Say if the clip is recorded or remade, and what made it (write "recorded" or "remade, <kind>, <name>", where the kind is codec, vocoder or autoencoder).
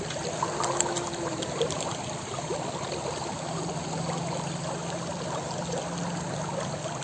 recorded